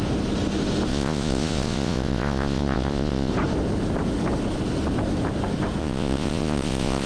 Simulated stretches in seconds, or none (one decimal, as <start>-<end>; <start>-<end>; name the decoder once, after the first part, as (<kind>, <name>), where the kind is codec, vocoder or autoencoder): 0.9-3.3 (vocoder, Vocos); 5.8-7.1